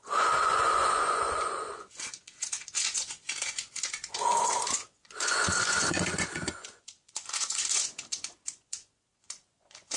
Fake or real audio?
fake